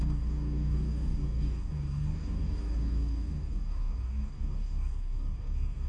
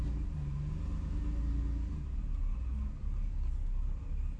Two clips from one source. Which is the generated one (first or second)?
first